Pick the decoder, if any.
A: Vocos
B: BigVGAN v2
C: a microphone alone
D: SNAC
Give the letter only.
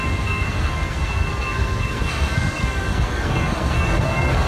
D